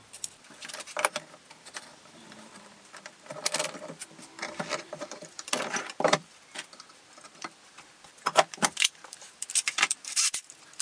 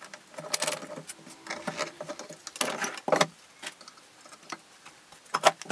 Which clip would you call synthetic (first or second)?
first